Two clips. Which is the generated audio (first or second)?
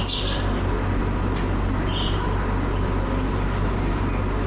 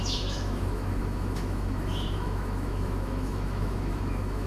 second